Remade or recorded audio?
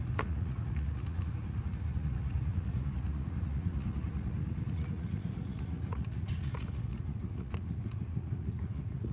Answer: remade